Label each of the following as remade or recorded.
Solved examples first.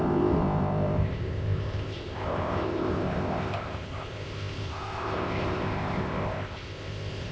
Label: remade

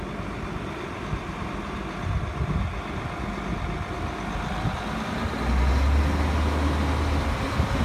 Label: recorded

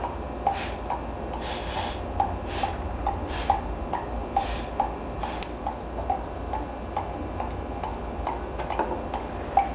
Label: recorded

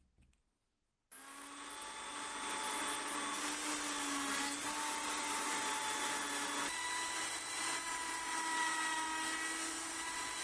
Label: recorded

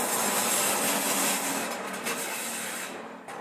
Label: recorded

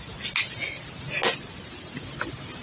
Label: recorded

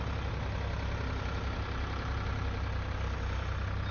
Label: recorded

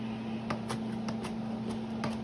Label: recorded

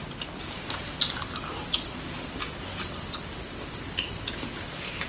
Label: recorded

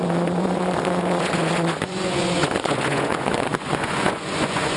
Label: remade